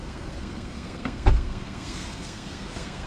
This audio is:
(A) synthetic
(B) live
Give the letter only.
A